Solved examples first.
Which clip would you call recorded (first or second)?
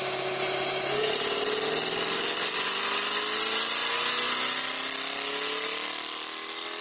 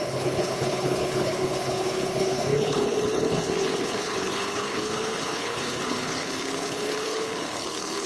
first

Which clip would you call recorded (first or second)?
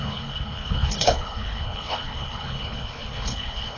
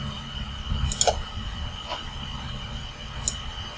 second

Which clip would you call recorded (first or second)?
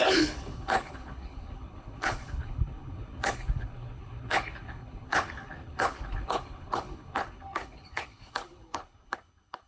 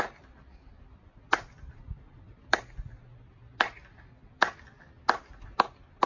second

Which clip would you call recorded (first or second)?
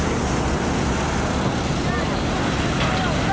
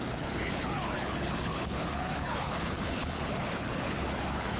first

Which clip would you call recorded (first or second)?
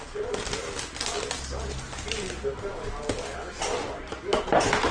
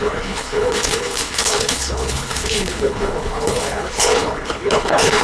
first